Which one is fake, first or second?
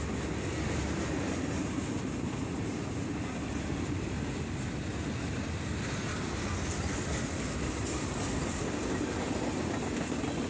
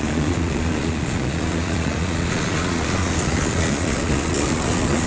second